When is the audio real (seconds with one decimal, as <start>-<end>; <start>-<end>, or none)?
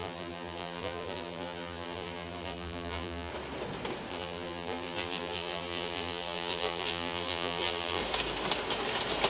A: 3.3-4.1; 8.0-9.3